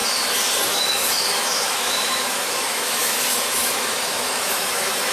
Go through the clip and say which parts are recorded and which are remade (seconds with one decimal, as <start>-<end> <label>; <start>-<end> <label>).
0.0-0.7 recorded; 0.7-5.1 remade